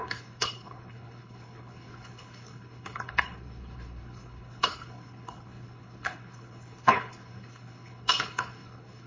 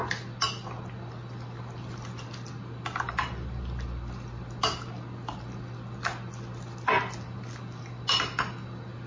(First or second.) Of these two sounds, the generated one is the first